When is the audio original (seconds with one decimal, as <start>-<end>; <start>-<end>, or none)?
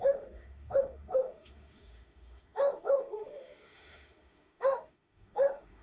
none